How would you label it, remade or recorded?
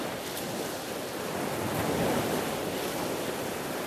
recorded